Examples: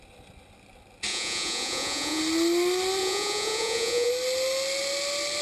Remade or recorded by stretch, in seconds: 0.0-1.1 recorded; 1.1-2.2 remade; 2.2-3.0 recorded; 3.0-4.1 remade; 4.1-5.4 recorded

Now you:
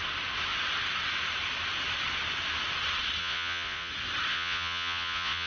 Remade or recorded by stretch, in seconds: 0.0-3.2 recorded; 3.2-3.9 remade; 3.9-4.3 recorded; 4.3-5.5 remade

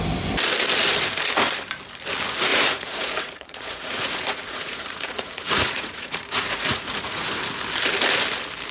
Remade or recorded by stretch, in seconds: 0.0-2.5 recorded; 2.5-7.3 remade; 7.3-8.7 recorded

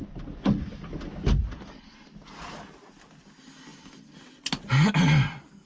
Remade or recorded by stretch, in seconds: 0.0-5.7 recorded

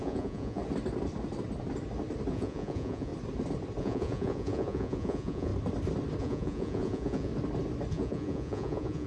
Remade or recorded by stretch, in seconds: 0.0-0.6 remade; 0.6-2.3 recorded; 2.3-3.1 remade; 3.1-3.8 recorded; 3.8-5.5 remade; 5.5-6.2 recorded; 6.2-7.3 remade; 7.3-7.9 recorded; 7.9-9.1 remade

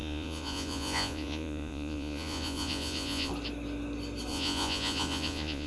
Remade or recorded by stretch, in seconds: 0.0-3.3 remade; 3.3-4.3 recorded; 4.3-5.7 remade